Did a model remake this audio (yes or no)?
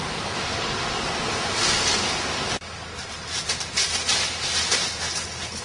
no